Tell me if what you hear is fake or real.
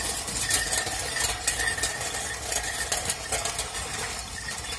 real